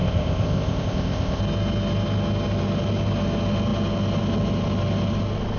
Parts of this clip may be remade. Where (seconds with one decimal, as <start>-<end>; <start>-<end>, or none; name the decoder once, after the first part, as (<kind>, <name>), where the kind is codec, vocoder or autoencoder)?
0.0-1.4 (codec, ZipCodec)